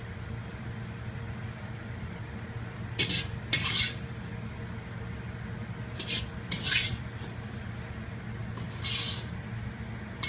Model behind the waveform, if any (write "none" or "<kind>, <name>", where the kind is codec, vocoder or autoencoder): none